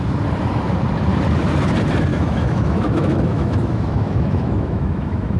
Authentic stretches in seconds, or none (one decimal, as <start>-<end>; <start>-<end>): 0.0-2.1